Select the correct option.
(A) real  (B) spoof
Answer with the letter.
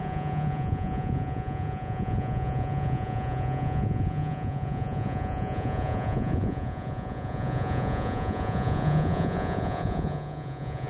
B